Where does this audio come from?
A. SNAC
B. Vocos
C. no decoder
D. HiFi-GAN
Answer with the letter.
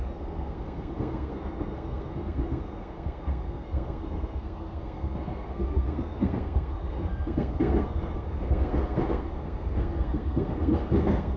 A